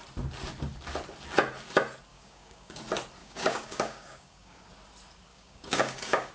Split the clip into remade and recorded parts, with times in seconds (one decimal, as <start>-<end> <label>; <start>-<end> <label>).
0.0-2.1 recorded; 2.1-2.8 remade; 2.8-3.2 recorded; 3.2-4.6 remade; 4.6-5.3 recorded; 5.3-6.3 remade